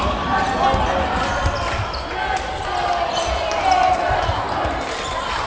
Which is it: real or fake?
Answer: real